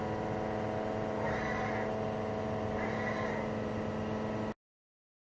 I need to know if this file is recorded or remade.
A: recorded